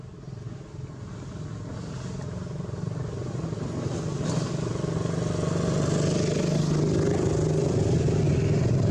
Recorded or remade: recorded